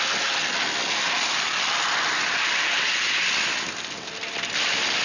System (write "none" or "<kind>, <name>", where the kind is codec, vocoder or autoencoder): none